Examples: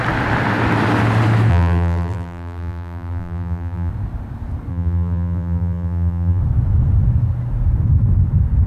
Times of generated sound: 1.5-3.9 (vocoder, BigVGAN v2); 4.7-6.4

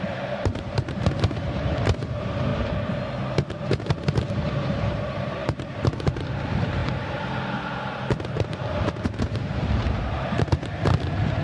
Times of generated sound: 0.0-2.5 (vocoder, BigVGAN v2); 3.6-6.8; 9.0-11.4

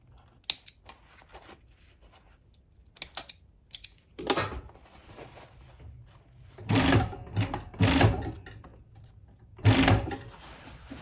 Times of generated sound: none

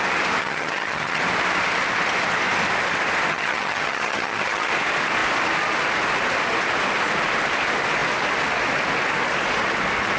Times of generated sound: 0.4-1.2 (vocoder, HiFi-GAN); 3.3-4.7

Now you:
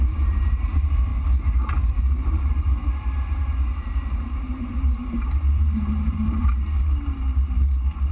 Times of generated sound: 0.0-8.1 (vocoder, BigVGAN v2)